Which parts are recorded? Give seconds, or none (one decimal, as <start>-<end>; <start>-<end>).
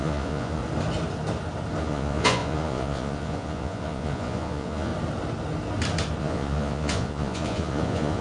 0.6-1.8; 4.9-6.2